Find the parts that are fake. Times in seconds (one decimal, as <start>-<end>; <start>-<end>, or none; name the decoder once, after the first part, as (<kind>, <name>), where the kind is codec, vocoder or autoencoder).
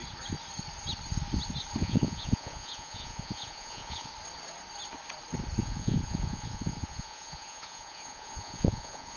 1.8-4.1 (vocoder, Vocos); 5.6-9.2